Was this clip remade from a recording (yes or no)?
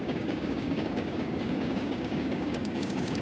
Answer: yes